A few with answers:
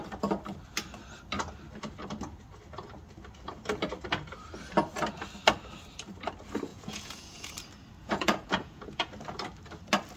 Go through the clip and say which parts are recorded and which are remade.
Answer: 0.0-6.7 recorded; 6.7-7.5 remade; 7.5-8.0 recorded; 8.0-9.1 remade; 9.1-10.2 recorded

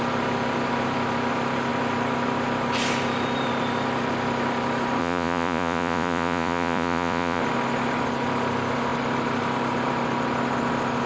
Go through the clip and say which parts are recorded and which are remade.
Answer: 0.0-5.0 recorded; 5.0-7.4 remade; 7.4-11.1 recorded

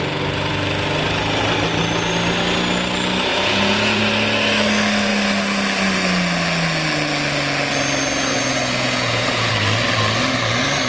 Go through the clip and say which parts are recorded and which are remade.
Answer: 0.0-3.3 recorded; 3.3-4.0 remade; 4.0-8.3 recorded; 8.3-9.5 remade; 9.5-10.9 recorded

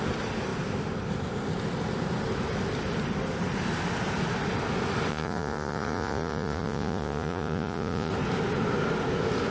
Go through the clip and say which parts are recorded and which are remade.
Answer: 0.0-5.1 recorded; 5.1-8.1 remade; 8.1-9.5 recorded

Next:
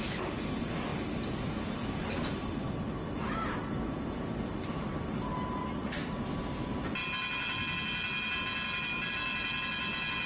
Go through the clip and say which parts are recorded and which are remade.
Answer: 0.0-5.6 recorded; 5.6-6.1 remade; 6.1-10.3 recorded

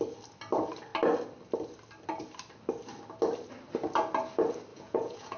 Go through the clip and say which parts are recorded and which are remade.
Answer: 0.0-4.7 recorded; 4.7-5.4 remade